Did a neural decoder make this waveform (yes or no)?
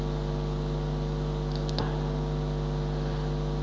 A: no